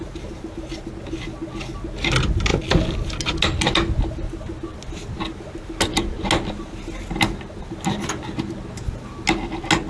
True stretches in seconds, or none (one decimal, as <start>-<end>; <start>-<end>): 0.0-9.9